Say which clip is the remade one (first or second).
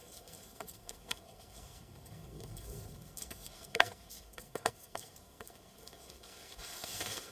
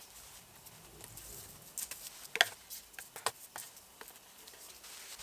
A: first